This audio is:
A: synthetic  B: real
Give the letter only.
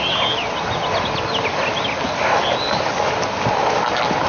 B